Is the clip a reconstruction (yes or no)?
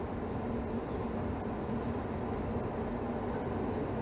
no